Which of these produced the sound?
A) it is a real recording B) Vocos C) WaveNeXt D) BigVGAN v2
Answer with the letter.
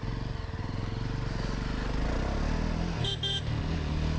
A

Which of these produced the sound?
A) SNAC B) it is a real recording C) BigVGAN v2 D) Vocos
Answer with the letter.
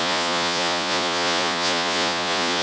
D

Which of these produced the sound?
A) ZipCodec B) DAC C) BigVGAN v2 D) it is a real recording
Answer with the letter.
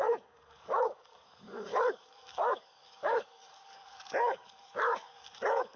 B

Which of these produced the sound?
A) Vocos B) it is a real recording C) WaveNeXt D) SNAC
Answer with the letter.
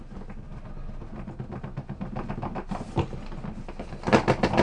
B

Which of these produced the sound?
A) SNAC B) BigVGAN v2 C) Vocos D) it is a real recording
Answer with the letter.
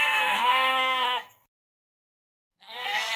A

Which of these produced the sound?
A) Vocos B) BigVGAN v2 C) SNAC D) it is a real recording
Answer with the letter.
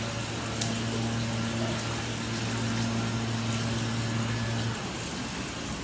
D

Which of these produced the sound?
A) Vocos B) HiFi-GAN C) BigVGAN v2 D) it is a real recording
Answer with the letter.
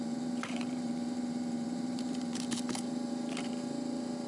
C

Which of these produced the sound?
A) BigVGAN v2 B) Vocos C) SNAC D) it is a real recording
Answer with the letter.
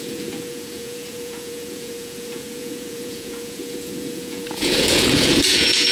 B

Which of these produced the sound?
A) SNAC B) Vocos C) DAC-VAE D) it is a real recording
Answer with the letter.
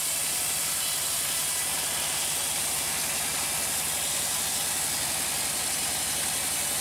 D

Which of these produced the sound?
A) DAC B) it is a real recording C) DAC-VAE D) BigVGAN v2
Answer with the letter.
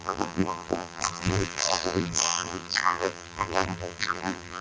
D